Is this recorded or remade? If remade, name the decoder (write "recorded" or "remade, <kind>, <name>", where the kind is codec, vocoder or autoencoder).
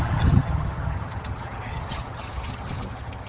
remade, vocoder, HiFi-GAN